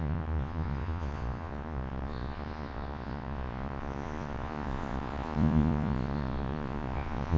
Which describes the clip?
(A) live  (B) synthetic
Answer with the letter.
B